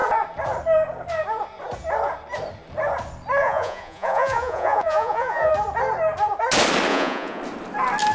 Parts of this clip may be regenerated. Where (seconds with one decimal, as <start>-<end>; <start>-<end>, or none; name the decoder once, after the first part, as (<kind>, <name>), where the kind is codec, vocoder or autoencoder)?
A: 3.4-5.5 (vocoder, Vocos); 6.9-7.4